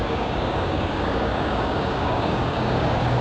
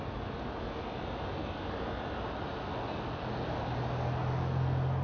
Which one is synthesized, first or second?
first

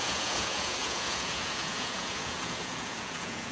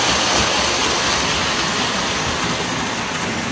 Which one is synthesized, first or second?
first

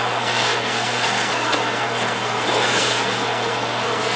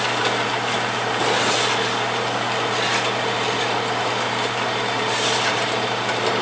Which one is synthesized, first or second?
first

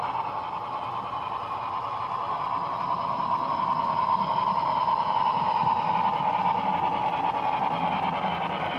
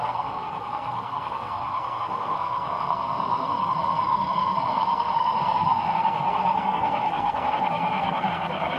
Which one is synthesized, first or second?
second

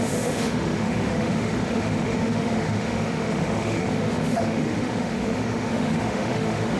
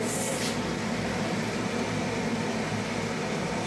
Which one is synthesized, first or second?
first